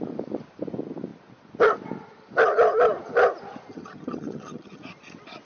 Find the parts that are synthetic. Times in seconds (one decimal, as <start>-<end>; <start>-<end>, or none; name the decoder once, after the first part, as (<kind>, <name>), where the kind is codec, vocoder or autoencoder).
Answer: 3.7-4.8 (vocoder, HiFi-GAN)